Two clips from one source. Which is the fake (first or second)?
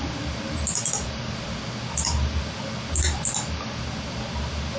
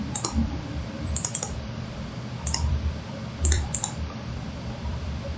second